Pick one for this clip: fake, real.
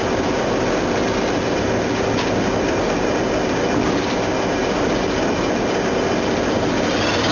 real